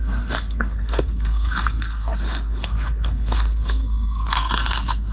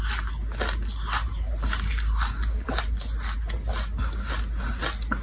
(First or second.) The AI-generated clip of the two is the first